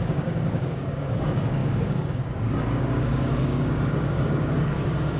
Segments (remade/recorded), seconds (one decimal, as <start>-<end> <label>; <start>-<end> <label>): 0.0-5.2 remade